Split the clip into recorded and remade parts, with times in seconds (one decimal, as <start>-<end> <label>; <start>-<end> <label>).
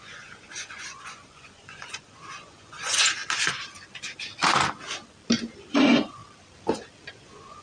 0.0-3.2 remade; 3.2-5.8 recorded; 5.8-6.2 remade; 6.2-7.1 recorded; 7.1-7.6 remade